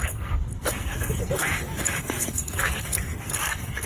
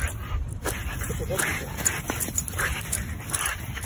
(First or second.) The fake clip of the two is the first